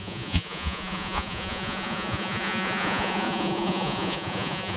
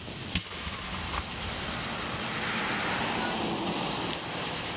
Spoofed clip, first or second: first